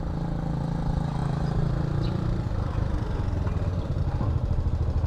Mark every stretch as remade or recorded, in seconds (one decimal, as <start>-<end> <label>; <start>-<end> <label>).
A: 0.0-1.2 recorded; 1.2-4.0 remade; 4.0-5.1 recorded